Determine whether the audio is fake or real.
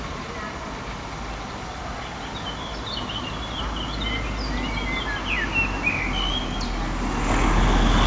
real